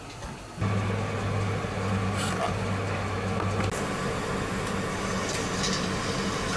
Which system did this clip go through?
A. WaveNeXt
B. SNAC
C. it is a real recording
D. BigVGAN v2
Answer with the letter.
C